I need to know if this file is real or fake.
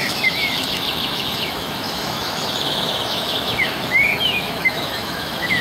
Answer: fake